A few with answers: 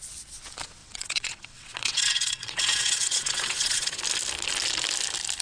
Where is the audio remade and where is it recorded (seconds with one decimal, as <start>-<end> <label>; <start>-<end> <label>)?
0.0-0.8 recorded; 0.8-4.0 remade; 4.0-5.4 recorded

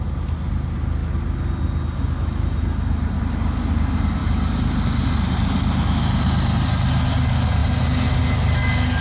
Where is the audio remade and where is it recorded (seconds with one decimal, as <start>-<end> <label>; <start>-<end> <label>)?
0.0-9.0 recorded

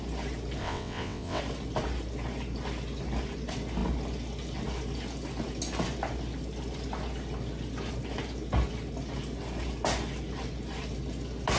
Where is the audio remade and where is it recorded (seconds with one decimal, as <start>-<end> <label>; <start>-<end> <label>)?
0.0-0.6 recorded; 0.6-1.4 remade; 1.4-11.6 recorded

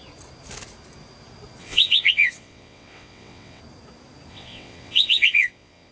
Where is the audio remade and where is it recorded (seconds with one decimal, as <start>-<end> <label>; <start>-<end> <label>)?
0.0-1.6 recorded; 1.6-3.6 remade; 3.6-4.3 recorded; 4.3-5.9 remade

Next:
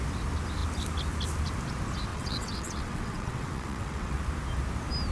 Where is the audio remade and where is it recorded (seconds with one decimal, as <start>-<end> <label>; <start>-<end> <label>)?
0.0-2.1 recorded; 2.1-4.2 remade; 4.2-5.1 recorded